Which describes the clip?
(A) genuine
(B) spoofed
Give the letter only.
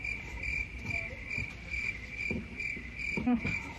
B